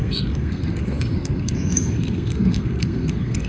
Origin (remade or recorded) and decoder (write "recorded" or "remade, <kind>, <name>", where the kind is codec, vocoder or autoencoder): remade, codec, SNAC